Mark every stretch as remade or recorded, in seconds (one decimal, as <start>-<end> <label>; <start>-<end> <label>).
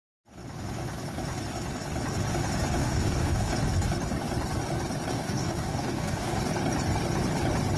0.0-2.8 recorded; 2.8-3.5 remade; 3.5-5.1 recorded; 5.1-6.4 remade; 6.4-7.8 recorded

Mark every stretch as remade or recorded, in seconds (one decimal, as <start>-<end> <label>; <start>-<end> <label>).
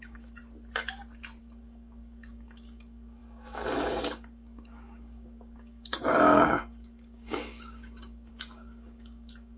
0.0-0.4 remade; 0.4-1.4 recorded; 1.4-9.6 remade